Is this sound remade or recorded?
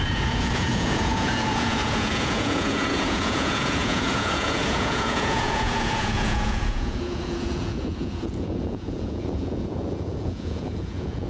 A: remade